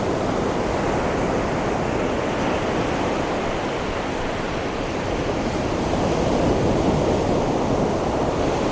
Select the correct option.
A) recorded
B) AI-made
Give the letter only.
A